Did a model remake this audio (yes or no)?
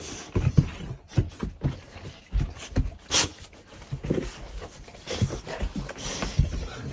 no